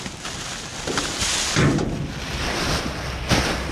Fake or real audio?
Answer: real